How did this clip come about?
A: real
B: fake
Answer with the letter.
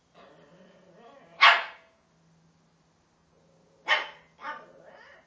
A